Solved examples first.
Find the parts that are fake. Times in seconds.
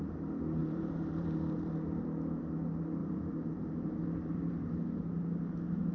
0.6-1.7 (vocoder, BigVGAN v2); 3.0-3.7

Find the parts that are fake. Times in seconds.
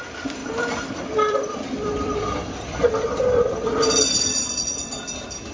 0.4-2.2 (vocoder, BigVGAN v2)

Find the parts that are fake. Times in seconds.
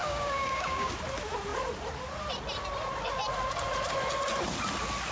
0.0-0.9 (codec, DAC)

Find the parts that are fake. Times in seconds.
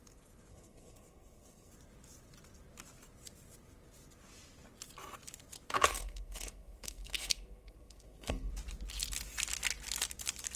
0.5-1.7 (codec, SNAC); 5.9-8.5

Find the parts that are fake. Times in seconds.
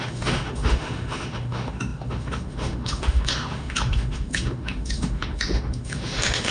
0.0-6.5 (autoencoder, DAC-VAE)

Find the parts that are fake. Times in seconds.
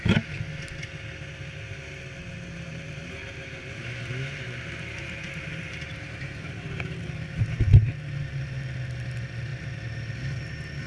2.2-7.4 (vocoder, BigVGAN v2)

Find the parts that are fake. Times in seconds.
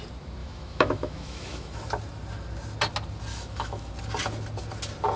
0.4-1.8 (autoencoder, DAC-VAE); 3.3-3.9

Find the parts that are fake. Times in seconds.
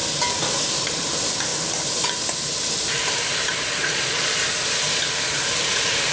3.8-4.4 (vocoder, Vocos)